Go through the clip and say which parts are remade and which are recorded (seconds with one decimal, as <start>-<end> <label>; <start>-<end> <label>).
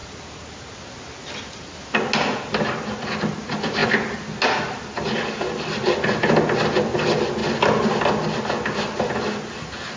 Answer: 0.0-10.0 recorded